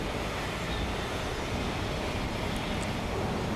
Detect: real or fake real